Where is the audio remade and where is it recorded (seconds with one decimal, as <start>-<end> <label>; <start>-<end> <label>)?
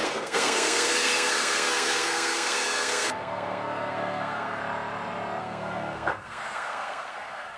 0.0-4.6 remade; 4.6-5.4 recorded; 5.4-7.6 remade